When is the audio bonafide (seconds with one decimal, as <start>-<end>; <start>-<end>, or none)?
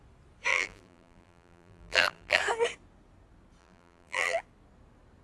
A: 0.0-0.5; 2.4-3.6; 4.4-5.2